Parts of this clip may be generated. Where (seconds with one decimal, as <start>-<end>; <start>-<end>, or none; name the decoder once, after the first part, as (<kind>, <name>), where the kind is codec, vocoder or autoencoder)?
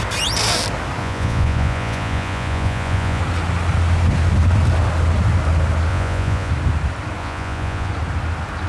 1.0-3.2 (vocoder, Vocos); 5.9-6.5; 7.2-7.9